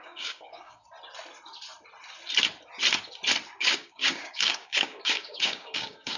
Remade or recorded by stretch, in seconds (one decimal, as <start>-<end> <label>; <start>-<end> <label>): 0.0-0.8 remade; 0.8-3.6 recorded; 3.6-6.2 remade